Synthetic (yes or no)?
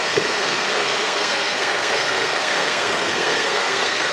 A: yes